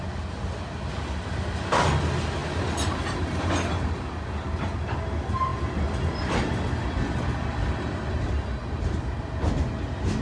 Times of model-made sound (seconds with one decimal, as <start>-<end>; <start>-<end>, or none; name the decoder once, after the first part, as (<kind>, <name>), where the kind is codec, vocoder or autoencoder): none